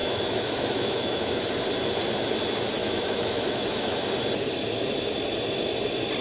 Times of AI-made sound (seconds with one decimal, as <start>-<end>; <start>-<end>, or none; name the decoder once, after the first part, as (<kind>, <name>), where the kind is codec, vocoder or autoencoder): 0.0-1.4 (autoencoder, DAC-VAE); 2.8-4.0